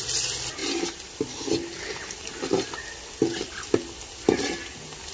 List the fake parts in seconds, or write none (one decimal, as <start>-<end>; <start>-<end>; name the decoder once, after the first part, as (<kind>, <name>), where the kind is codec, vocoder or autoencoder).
none